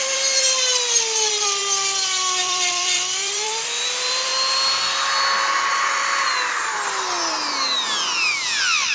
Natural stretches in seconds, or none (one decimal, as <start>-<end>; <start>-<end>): 1.6-2.4; 4.3-6.1